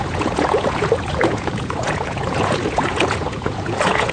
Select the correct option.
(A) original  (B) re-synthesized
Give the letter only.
B